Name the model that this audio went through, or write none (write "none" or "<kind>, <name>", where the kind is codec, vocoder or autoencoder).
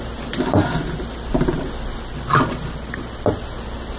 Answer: none